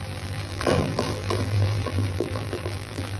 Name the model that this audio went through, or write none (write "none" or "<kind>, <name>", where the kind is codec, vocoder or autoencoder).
vocoder, BigVGAN v2